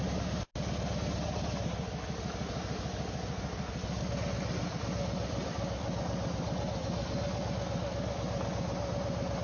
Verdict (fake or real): real